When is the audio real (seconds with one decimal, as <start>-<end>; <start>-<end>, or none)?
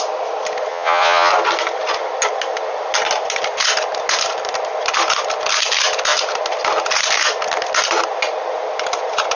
0.0-0.7; 1.3-9.4